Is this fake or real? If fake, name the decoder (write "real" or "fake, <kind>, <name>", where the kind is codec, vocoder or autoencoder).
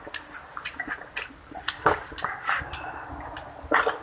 real